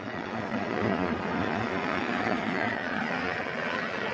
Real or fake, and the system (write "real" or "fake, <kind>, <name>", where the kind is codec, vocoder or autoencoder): fake, vocoder, Vocos